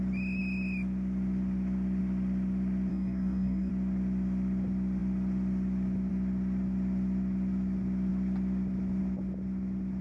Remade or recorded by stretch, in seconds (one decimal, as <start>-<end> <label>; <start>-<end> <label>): 0.0-2.9 recorded; 2.9-3.7 remade; 3.7-10.0 recorded